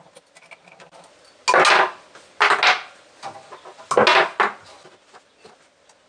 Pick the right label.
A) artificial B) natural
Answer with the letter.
B